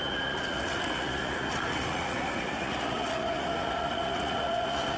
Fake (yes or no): yes